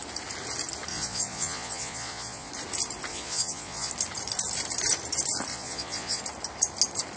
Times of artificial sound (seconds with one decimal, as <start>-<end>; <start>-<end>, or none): 0.9-2.5; 3.1-3.9; 5.5-6.2